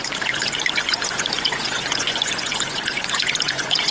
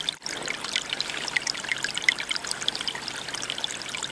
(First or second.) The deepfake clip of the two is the first